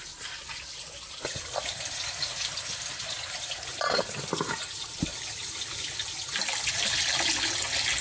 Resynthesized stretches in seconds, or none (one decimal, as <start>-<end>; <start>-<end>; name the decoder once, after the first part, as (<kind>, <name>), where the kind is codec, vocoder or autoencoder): none